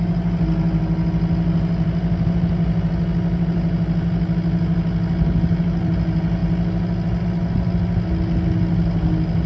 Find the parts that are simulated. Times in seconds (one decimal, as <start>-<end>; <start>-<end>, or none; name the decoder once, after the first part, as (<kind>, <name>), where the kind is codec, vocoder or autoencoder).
none